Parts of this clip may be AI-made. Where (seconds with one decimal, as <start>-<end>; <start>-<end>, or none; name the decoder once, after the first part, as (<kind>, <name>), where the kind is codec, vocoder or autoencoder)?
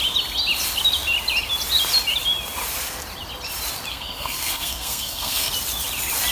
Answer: 3.9-5.5 (codec, SNAC)